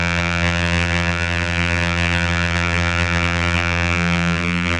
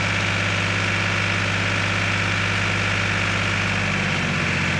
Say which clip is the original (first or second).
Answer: second